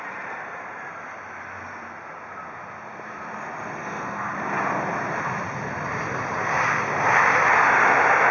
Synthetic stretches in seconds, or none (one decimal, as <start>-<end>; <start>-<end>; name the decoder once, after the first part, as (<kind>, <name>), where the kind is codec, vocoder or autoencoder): 3.8-4.3 (codec, SNAC)

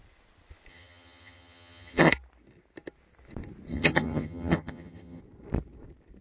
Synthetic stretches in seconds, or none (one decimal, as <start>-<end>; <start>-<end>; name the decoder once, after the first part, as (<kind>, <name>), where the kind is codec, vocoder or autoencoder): 0.7-2.1 (vocoder, HiFi-GAN); 3.7-5.2

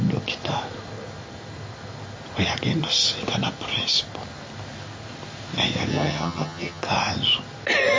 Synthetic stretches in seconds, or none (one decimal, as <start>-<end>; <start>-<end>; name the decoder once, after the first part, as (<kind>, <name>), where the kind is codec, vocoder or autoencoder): 5.9-6.8 (vocoder, HiFi-GAN)

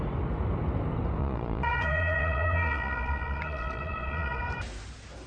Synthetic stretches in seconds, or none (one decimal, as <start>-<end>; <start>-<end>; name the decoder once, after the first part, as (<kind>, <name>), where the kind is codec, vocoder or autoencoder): 1.2-4.4 (vocoder, Vocos)

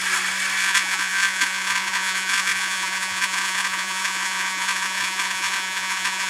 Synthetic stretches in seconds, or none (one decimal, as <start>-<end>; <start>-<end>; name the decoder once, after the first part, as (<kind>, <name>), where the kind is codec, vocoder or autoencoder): 0.6-6.3 (vocoder, Vocos)

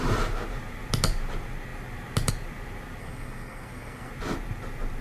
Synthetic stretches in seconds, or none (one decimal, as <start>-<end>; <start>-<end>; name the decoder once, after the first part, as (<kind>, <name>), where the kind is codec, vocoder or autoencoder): 3.0-4.1 (codec, SNAC)